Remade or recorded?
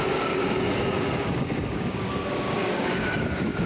remade